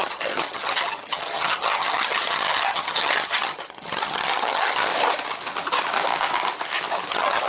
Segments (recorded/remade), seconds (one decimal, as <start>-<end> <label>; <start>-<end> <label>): 0.0-4.9 remade; 4.9-7.1 recorded; 7.1-7.5 remade